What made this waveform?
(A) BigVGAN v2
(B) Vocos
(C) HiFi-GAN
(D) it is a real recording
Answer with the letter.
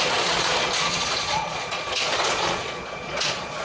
B